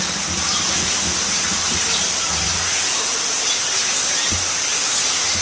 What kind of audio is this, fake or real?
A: real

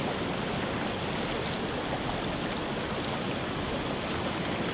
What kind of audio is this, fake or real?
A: real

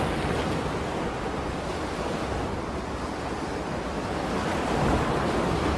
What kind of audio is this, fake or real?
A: real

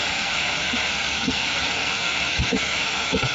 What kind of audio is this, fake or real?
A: fake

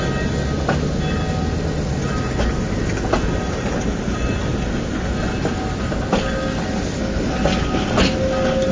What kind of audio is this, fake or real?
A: real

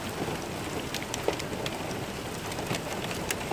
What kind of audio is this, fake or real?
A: real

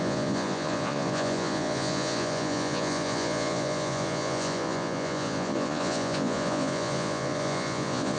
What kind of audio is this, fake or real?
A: fake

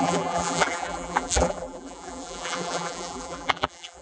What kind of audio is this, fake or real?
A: fake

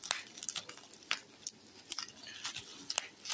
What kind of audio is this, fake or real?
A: real